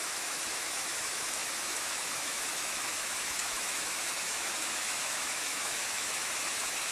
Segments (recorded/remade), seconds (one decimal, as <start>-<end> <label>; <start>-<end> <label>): 0.0-6.9 remade